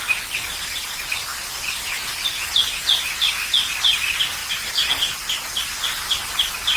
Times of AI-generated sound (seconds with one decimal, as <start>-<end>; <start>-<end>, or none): none